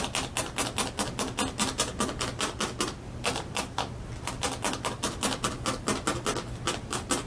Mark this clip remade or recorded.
recorded